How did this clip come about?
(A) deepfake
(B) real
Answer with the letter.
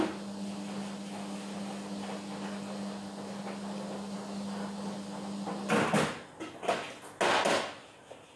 B